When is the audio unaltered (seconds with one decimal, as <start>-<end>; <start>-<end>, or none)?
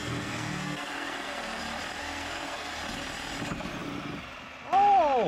1.6-2.0; 2.7-5.3